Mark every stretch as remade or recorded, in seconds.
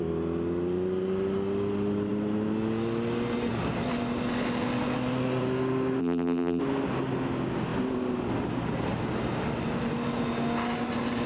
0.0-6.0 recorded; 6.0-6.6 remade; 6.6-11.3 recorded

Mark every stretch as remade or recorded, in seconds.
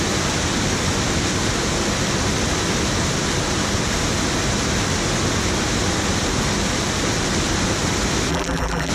0.0-8.3 recorded; 8.3-8.9 remade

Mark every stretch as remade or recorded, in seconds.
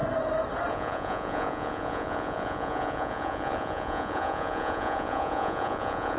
0.0-0.7 recorded; 0.7-6.2 remade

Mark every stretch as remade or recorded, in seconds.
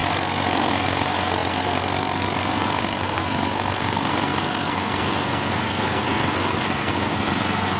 0.0-7.8 remade